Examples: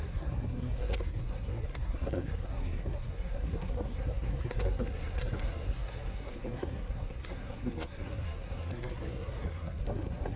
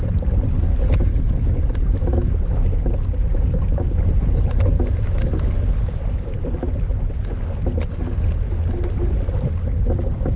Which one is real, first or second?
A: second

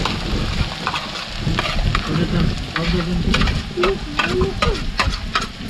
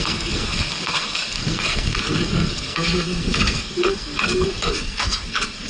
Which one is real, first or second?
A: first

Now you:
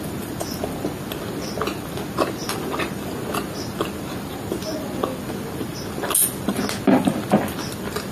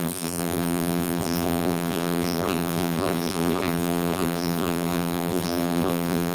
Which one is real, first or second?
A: first